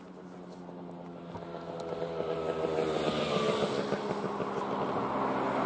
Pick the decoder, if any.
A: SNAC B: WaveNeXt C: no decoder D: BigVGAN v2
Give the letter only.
C